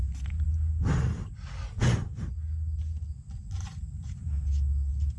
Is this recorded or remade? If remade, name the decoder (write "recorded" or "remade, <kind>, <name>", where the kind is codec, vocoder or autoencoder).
recorded